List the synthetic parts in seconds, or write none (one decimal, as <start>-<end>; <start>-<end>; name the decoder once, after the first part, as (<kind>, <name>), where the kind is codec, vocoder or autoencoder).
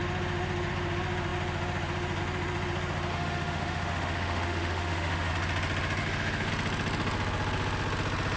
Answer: 3.1-5.3 (autoencoder, DAC-VAE); 6.0-6.5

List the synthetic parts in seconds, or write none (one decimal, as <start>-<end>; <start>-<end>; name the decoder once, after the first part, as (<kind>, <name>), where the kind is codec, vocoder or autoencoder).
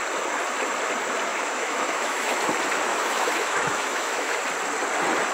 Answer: 1.3-2.4 (autoencoder, DAC-VAE); 2.9-4.4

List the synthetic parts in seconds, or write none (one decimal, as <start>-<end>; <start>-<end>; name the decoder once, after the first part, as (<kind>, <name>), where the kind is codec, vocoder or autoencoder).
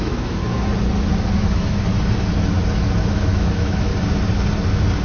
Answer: 0.0-0.4 (autoencoder, DAC-VAE); 1.1-1.9; 3.1-3.9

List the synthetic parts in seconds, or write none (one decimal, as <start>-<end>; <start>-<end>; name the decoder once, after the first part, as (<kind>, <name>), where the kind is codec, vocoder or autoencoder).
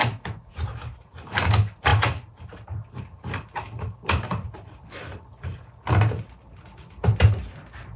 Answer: 0.0-0.5 (autoencoder, DAC-VAE)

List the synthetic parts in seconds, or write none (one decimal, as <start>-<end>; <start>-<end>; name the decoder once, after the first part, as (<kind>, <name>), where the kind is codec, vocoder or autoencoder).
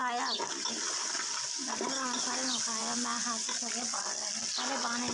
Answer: none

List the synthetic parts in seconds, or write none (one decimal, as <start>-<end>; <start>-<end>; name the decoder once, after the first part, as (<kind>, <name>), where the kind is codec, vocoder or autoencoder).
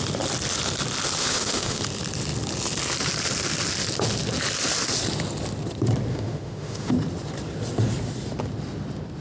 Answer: 1.2-1.8 (autoencoder, DAC-VAE); 6.1-6.9